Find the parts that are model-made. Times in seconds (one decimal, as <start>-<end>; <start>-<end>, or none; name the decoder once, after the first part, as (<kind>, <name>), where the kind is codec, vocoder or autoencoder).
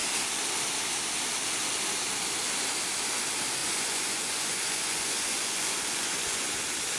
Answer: 3.6-6.5 (vocoder, Vocos)